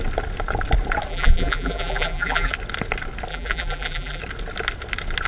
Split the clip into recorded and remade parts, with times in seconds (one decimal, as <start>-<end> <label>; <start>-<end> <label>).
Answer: 0.0-1.1 recorded; 1.1-2.5 remade; 2.5-3.3 recorded; 3.3-4.2 remade; 4.2-5.3 recorded